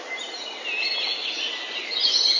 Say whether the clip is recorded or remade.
recorded